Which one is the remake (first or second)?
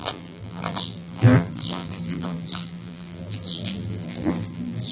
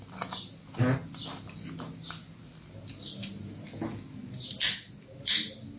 first